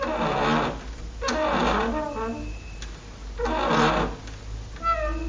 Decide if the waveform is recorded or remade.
recorded